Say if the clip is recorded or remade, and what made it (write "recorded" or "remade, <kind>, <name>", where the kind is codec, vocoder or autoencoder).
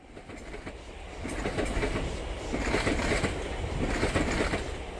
recorded